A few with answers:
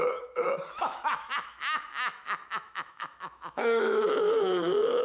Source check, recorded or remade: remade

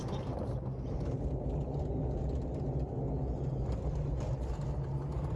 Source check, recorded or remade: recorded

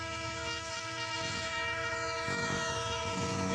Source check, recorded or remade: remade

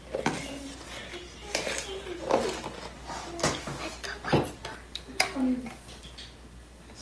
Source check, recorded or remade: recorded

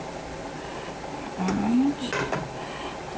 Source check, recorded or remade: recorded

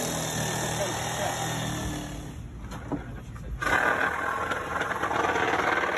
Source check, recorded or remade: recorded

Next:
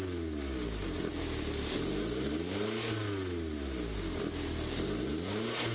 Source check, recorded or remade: recorded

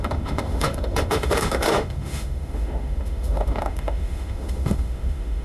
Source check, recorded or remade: remade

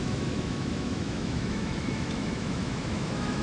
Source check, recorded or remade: remade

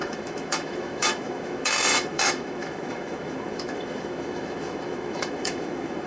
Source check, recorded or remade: remade